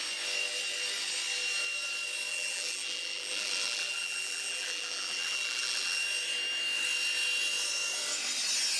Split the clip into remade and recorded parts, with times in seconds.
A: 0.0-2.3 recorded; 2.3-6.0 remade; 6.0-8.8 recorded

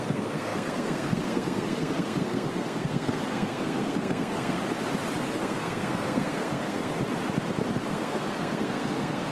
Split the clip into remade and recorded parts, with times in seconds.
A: 0.0-4.6 remade; 4.6-5.4 recorded; 5.4-6.9 remade; 6.9-7.9 recorded; 7.9-9.3 remade

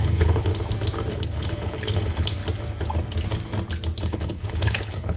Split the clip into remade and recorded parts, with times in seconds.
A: 0.0-0.5 remade; 0.5-1.1 recorded; 1.1-2.4 remade; 2.4-4.0 recorded; 4.0-5.2 remade

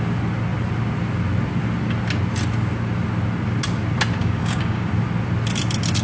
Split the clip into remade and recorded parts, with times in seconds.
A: 0.0-4.2 recorded; 4.2-4.9 remade; 4.9-6.0 recorded